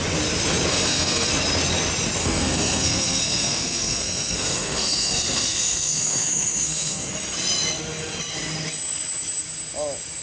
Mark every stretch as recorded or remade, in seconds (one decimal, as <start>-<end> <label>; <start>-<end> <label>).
0.0-0.7 recorded; 0.7-1.3 remade; 1.3-2.2 recorded; 2.2-7.1 remade; 7.1-10.2 recorded